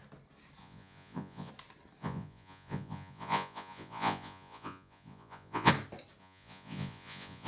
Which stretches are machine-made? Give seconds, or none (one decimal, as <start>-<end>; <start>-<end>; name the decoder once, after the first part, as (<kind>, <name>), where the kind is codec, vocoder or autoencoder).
0.6-1.5 (vocoder, Vocos); 2.0-5.7; 6.2-7.5